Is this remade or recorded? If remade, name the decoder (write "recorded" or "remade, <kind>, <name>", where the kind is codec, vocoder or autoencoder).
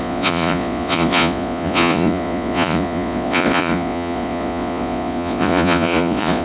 remade, vocoder, Vocos